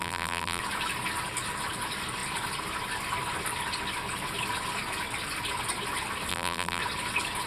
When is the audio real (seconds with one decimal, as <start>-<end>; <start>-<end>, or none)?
0.6-6.3; 6.8-7.5